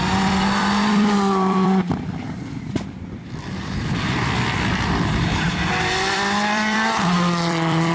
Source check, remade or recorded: remade